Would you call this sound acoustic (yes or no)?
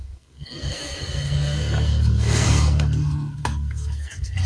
no